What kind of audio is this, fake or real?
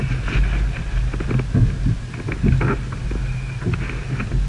real